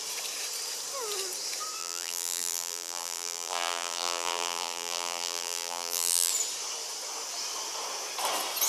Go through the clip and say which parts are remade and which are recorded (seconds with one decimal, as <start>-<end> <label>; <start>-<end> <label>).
0.0-1.8 recorded; 1.8-6.3 remade; 6.3-8.7 recorded

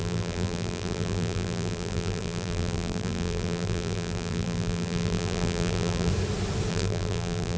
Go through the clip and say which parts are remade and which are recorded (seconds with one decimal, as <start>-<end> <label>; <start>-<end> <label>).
0.0-6.1 remade; 6.1-6.7 recorded; 6.7-7.6 remade

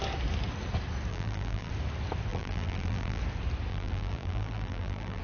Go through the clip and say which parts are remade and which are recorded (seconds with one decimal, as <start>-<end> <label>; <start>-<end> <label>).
0.0-1.1 recorded; 1.1-1.7 remade; 1.7-2.3 recorded; 2.3-3.2 remade; 3.2-3.7 recorded; 3.7-5.2 remade

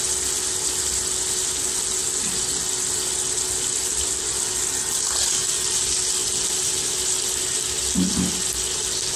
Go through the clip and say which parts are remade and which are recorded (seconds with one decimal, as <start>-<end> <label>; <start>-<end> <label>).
0.0-9.2 recorded

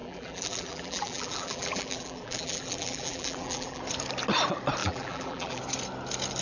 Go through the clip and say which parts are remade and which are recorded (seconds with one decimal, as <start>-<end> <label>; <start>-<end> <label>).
0.0-3.8 remade; 3.8-4.8 recorded; 4.8-5.6 remade; 5.6-6.4 recorded

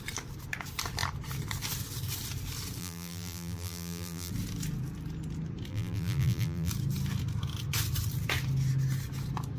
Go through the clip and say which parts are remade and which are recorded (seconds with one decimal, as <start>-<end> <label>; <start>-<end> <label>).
0.0-2.8 recorded; 2.8-4.3 remade; 4.3-5.7 recorded; 5.7-6.7 remade; 6.7-9.6 recorded

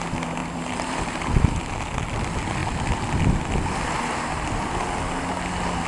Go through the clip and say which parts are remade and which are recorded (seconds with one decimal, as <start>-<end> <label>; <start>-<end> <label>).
0.0-0.4 recorded; 0.4-1.7 remade; 1.7-5.9 recorded

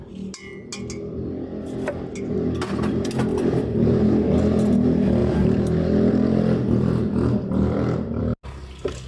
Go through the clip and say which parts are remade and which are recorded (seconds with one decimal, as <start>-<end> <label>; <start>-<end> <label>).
0.0-3.3 recorded; 3.3-4.0 remade; 4.0-5.2 recorded; 5.2-8.2 remade; 8.2-9.1 recorded